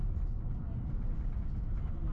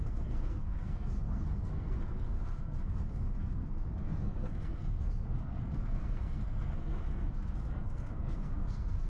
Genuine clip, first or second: first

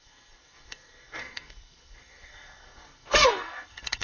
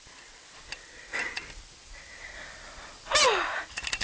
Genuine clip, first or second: second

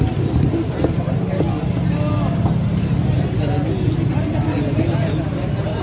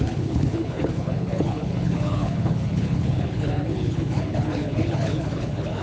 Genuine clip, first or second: first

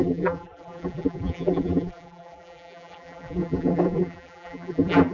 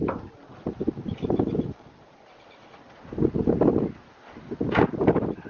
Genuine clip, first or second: second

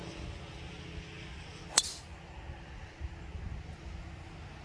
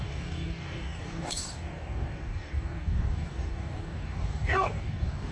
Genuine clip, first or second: first